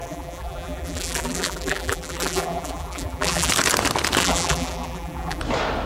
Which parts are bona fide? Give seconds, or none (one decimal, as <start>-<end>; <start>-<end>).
3.5-4.2; 5.4-5.9